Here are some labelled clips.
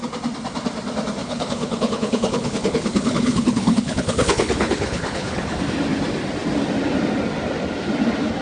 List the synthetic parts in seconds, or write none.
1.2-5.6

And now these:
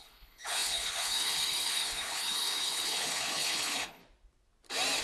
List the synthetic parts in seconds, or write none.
0.0-4.0

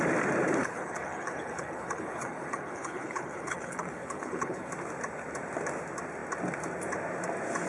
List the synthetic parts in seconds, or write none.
0.6-4.7

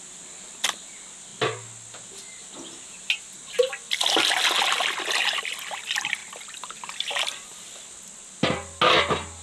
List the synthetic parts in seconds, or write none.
none

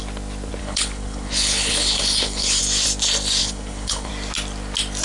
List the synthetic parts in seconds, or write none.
0.6-2.6; 3.4-4.1

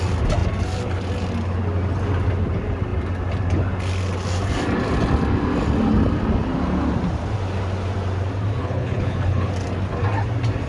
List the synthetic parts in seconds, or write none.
8.6-9.5

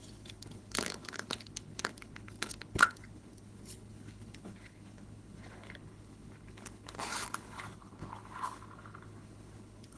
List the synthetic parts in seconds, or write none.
0.0-10.0